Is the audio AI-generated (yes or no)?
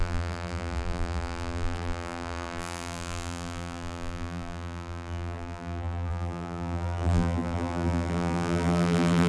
yes